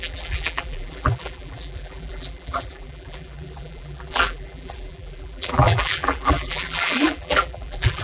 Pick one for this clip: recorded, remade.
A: remade